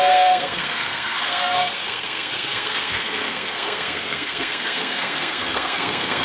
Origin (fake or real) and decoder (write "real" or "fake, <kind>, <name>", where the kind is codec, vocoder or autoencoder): fake, codec, SNAC